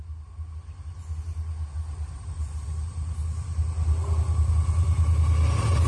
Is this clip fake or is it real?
real